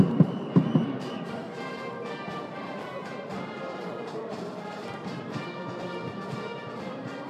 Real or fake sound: fake